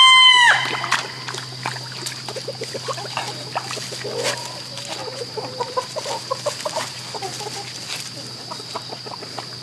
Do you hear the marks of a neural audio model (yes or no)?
no